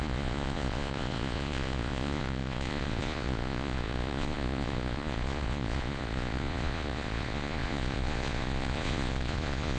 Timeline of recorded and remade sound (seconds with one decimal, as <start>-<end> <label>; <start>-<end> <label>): 0.0-9.8 remade